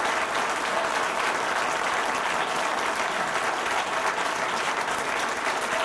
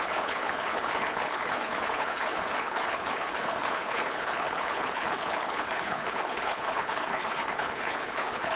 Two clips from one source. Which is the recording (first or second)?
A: first